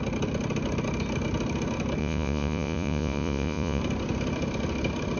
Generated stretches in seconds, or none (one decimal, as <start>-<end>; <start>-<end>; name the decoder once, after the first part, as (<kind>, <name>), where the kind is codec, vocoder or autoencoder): 2.0-3.8 (vocoder, Vocos)